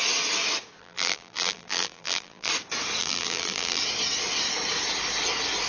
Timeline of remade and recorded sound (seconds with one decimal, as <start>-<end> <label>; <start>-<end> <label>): 0.0-0.8 recorded; 0.8-2.5 remade; 2.5-3.0 recorded; 3.0-3.8 remade; 3.8-5.7 recorded